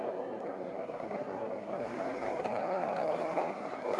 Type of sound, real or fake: fake